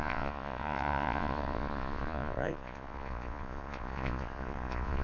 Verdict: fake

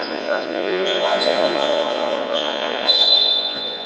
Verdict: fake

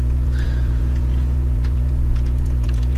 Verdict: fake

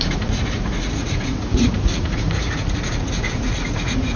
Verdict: fake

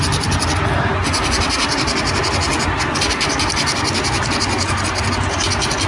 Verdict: real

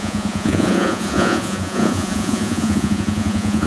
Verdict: fake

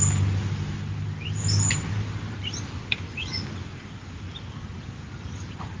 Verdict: real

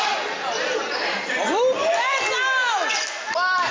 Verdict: real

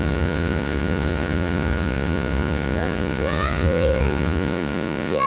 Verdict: fake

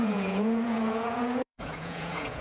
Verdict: fake